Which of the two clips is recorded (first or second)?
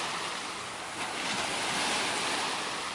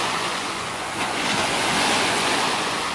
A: first